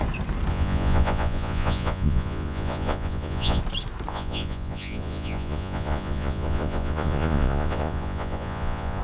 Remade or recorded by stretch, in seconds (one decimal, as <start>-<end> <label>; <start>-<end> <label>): 0.0-0.5 recorded; 0.5-3.6 remade; 3.6-4.1 recorded; 4.1-9.0 remade